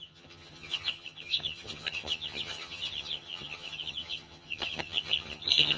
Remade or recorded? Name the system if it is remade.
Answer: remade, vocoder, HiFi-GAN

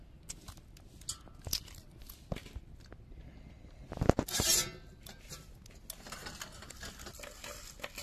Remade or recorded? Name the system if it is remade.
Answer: recorded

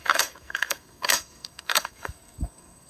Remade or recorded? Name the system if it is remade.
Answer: remade, codec, SNAC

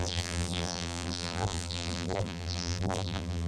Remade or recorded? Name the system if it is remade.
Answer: remade, vocoder, BigVGAN v2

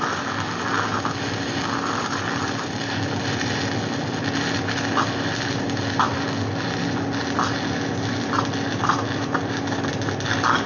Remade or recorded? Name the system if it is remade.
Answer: recorded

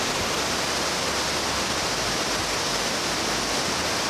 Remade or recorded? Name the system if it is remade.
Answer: recorded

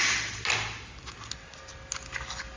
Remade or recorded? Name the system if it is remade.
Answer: recorded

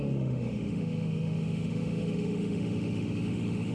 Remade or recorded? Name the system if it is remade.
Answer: remade, autoencoder, DAC-VAE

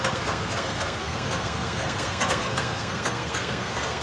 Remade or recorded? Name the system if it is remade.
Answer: remade, codec, SNAC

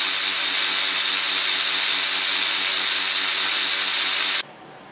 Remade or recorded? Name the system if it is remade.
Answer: recorded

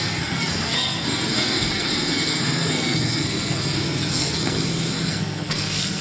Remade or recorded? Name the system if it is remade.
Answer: remade, codec, SNAC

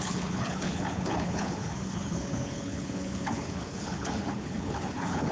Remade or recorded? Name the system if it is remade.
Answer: remade, codec, HILCodec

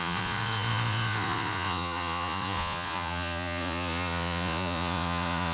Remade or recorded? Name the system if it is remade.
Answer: remade, vocoder, Vocos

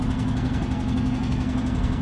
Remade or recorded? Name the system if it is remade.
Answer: remade, codec, SNAC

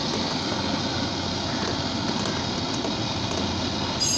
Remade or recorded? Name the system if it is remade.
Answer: recorded